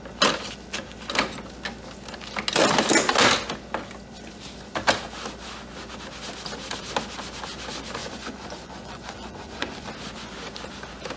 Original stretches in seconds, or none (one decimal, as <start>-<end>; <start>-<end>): 0.0-8.0; 9.9-11.2

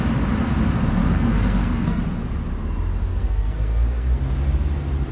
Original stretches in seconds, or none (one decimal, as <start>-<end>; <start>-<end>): 0.0-1.0; 2.0-3.1; 4.2-5.1

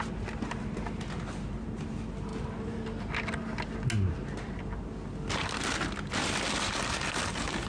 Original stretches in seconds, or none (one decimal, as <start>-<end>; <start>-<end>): 0.0-7.7

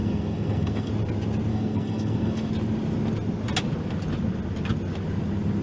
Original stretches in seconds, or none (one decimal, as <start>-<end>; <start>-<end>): 0.9-1.5; 2.5-5.6

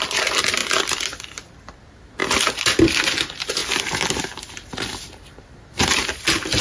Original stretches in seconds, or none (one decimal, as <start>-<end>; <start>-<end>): 0.0-6.6

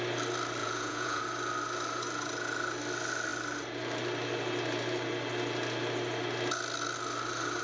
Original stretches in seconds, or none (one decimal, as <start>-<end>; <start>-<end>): 0.0-0.6; 1.2-7.6

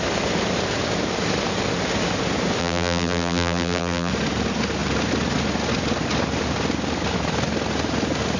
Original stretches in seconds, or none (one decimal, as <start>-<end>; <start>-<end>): 0.0-2.6; 4.1-8.4

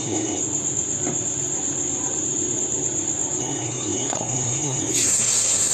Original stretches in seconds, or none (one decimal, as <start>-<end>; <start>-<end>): 0.4-3.4